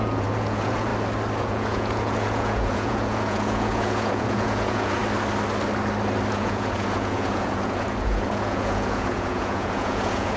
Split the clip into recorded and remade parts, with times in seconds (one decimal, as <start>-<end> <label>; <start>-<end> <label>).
0.0-0.9 remade; 0.9-1.4 recorded; 1.4-5.0 remade; 5.0-6.3 recorded; 6.3-10.4 remade